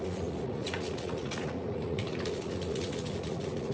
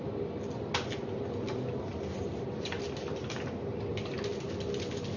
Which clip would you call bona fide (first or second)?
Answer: second